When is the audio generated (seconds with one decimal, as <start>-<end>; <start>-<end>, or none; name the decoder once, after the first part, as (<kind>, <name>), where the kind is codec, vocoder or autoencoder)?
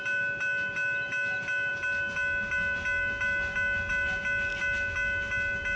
none